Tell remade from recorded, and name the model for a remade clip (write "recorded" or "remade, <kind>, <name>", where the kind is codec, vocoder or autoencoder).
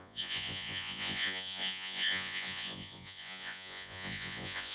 remade, vocoder, Vocos